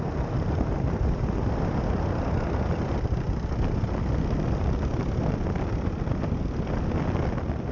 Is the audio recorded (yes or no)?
yes